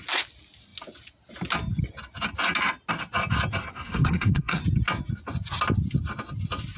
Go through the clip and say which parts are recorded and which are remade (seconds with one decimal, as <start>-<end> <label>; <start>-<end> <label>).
0.0-3.7 recorded; 3.7-4.6 remade; 4.6-6.8 recorded